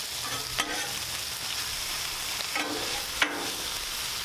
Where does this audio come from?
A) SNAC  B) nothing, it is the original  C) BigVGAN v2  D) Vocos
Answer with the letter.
B